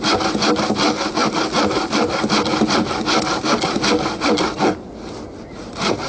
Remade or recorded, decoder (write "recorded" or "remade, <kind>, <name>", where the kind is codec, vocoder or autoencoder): recorded